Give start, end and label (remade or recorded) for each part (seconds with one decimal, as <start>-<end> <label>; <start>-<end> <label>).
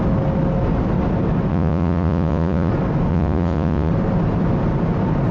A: 0.0-1.5 recorded; 1.5-2.7 remade; 2.7-3.1 recorded; 3.1-3.9 remade; 3.9-5.3 recorded